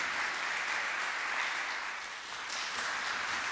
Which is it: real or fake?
real